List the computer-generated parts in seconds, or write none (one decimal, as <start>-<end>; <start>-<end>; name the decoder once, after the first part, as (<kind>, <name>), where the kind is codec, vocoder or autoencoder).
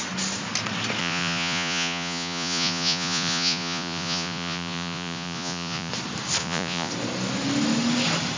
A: 1.0-5.9 (vocoder, Vocos); 6.4-6.9